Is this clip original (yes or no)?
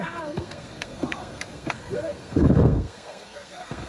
no